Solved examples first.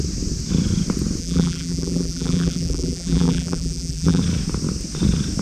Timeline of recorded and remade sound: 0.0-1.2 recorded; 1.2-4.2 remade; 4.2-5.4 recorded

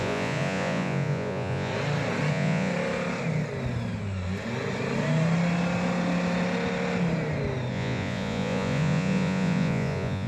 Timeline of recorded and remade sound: 0.0-1.7 remade; 1.7-2.3 recorded; 2.3-2.7 remade; 2.7-7.7 recorded; 7.7-10.3 remade

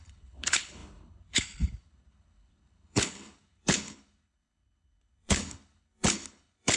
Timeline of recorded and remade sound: 0.0-6.8 remade

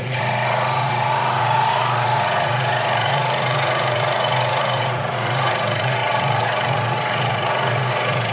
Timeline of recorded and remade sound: 0.0-8.3 remade

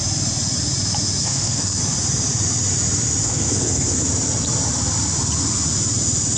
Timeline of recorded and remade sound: 0.0-1.2 recorded; 1.2-1.8 remade; 1.8-3.2 recorded; 3.2-4.0 remade; 4.0-6.4 recorded

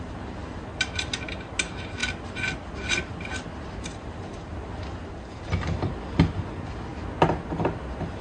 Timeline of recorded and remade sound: 0.0-8.2 recorded

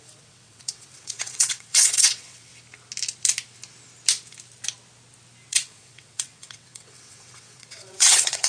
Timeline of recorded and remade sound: 0.0-2.5 remade; 2.5-5.5 recorded; 5.5-8.5 remade

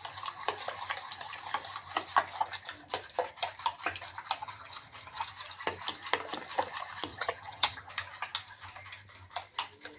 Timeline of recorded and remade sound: 0.0-4.4 recorded; 4.4-5.3 remade; 5.3-7.1 recorded; 7.1-7.9 remade; 7.9-10.0 recorded